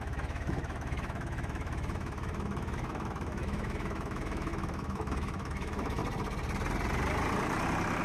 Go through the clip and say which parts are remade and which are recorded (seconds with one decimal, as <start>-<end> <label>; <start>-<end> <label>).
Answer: 0.0-6.0 remade; 6.0-8.0 recorded